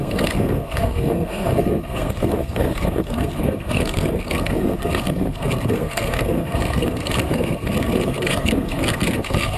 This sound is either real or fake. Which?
fake